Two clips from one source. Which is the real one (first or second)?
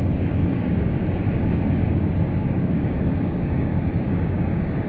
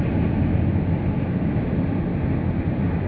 second